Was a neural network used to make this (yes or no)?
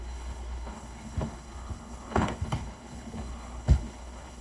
yes